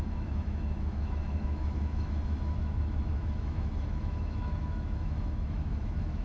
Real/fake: fake